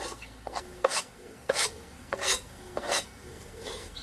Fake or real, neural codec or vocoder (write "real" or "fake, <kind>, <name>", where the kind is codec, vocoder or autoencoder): fake, codec, SNAC